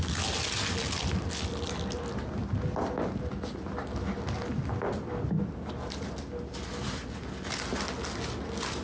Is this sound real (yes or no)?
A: yes